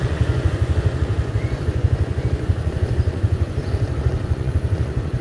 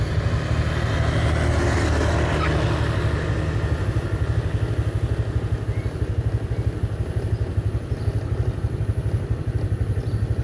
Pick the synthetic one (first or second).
first